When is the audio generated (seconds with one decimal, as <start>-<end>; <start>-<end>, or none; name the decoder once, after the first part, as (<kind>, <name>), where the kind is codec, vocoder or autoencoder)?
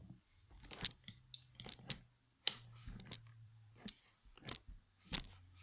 0.0-0.6 (vocoder, BigVGAN v2); 3.3-4.0